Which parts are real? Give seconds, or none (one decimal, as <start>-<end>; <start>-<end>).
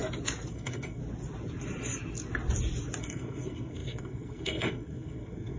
0.0-0.5; 1.0-3.0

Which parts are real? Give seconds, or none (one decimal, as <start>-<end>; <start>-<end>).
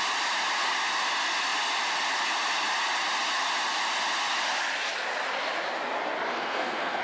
0.0-6.3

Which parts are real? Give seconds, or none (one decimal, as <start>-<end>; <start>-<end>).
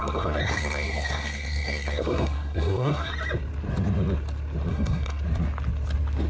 3.1-4.7; 5.2-6.3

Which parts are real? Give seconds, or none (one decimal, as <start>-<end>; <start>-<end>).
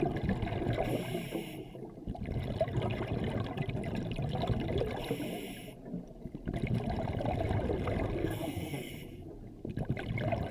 0.0-8.2; 8.9-10.5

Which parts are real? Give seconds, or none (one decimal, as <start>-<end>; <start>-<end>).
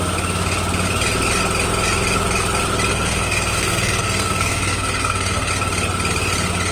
0.0-2.9; 5.5-6.7